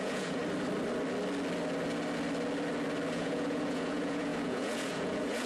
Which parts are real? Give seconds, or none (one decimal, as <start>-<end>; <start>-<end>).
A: 0.4-3.1